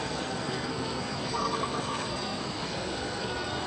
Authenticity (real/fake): fake